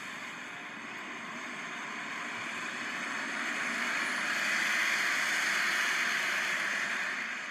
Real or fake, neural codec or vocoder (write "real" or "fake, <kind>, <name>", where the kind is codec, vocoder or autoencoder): fake, vocoder, BigVGAN v2